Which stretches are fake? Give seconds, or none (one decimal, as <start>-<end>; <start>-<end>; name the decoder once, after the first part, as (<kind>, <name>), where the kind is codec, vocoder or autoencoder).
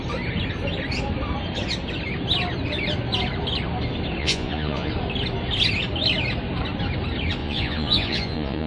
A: 4.2-4.9 (vocoder, Vocos); 7.4-8.7